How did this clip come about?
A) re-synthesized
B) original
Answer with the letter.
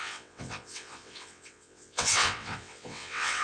A